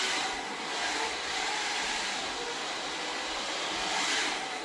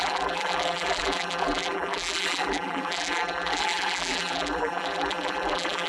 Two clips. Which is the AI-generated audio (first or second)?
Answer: second